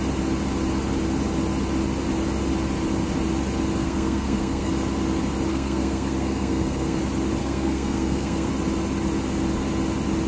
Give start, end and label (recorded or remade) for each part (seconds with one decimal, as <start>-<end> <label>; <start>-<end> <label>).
0.0-3.8 recorded; 3.8-4.7 remade; 4.7-5.5 recorded; 5.5-7.0 remade; 7.0-7.4 recorded; 7.4-8.5 remade; 8.5-10.3 recorded